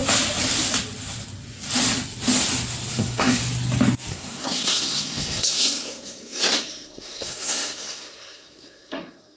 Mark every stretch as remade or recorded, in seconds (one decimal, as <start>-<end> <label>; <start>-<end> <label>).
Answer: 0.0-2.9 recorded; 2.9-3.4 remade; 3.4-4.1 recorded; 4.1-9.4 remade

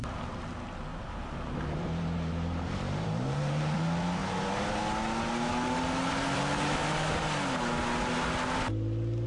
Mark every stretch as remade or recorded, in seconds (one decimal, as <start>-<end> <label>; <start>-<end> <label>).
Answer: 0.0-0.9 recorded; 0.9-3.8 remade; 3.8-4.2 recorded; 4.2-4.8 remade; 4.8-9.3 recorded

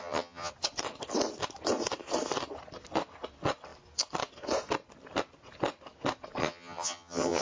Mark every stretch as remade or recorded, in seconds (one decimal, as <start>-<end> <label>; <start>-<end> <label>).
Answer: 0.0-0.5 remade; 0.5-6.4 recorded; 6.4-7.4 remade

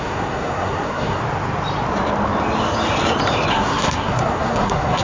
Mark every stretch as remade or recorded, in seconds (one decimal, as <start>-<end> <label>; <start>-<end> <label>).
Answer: 0.0-1.2 remade; 1.2-3.5 recorded; 3.5-5.0 remade

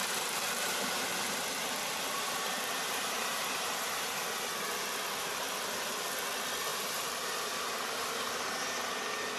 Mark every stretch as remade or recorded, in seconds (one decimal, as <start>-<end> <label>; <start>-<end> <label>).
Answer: 0.0-4.5 remade; 4.5-6.7 recorded; 6.7-8.2 remade; 8.2-9.4 recorded

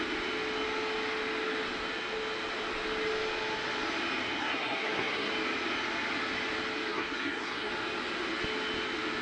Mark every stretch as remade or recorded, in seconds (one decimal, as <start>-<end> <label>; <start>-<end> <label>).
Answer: 0.0-4.4 recorded; 4.4-5.3 remade; 5.3-6.9 recorded; 6.9-7.7 remade; 7.7-9.2 recorded